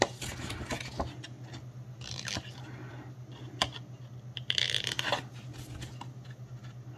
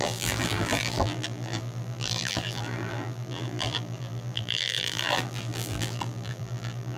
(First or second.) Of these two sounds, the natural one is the first